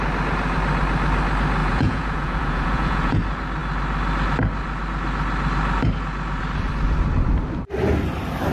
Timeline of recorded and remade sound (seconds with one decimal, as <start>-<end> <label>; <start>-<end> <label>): 0.0-1.6 recorded; 1.6-3.2 remade; 3.2-8.5 recorded